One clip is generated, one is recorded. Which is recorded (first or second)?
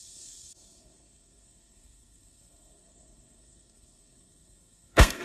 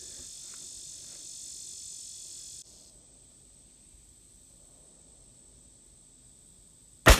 second